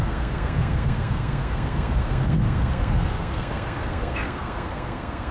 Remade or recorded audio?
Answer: remade